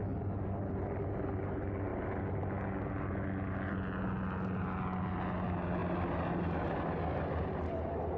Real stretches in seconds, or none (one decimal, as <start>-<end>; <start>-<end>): 0.0-8.2